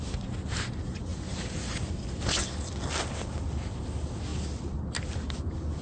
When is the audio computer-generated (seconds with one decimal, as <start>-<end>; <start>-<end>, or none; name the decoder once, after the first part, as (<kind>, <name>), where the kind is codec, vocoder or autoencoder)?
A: none